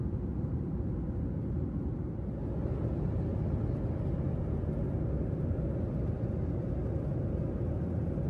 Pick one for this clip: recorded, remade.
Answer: recorded